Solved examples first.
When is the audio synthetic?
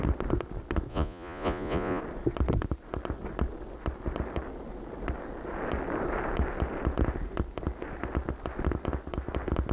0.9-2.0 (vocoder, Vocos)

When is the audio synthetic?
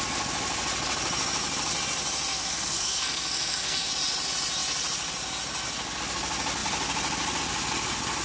2.3-3.9 (codec, SNAC)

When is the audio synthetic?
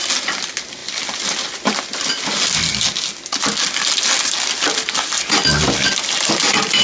none